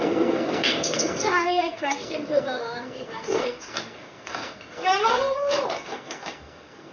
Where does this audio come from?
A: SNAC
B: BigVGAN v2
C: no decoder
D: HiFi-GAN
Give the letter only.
A